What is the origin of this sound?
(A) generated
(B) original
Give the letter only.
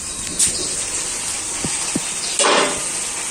B